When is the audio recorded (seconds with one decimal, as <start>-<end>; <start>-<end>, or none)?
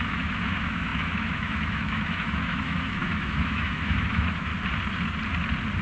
4.5-5.8